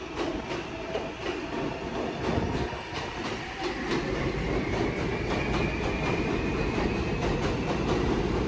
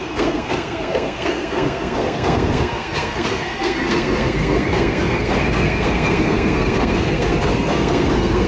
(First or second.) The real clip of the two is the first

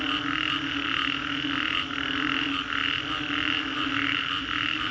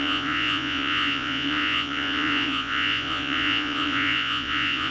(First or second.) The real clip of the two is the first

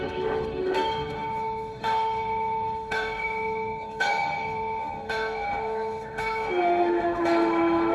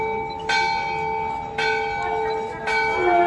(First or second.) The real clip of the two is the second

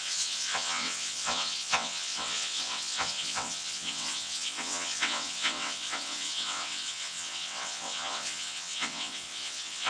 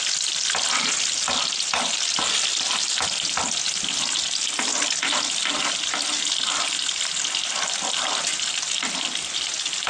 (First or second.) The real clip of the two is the second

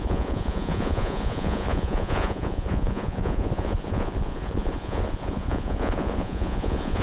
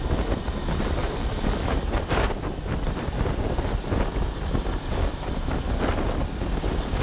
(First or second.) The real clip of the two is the second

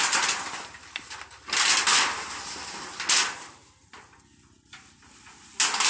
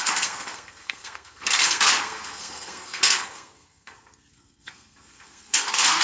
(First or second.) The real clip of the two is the first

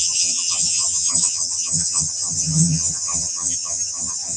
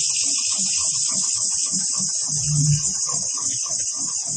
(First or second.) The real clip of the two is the second